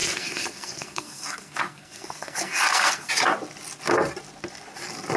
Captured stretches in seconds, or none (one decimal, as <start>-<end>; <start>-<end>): 3.1-5.2